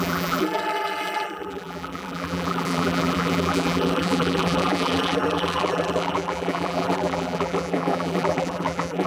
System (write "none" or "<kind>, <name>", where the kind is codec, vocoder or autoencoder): vocoder, BigVGAN v2